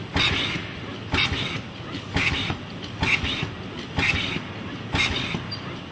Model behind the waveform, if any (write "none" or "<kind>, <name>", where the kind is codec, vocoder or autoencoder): none